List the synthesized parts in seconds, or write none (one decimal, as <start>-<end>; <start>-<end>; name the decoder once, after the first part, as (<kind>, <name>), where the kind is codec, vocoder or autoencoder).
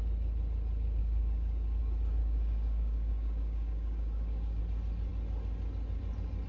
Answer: 1.0-1.8 (codec, DAC); 2.2-4.6